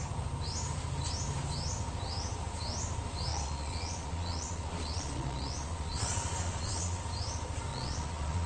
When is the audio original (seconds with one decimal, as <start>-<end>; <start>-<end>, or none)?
0.0-3.3; 7.0-7.7